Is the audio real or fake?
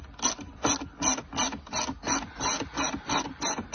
real